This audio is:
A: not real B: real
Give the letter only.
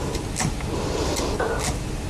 B